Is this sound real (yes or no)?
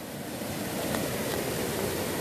yes